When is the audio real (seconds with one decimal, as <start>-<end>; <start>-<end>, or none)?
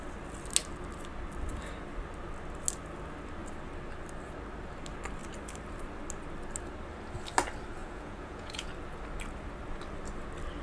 0.0-7.8; 8.7-10.6